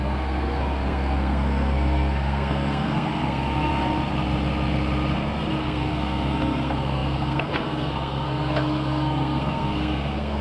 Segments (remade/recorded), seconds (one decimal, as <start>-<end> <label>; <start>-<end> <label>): 0.0-3.7 remade; 3.7-5.6 recorded; 5.6-10.4 remade